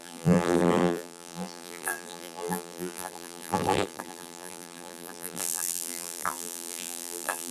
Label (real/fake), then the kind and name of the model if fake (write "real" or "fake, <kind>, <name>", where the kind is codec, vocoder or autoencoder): fake, vocoder, BigVGAN v2